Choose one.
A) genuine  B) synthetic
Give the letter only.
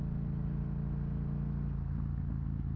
A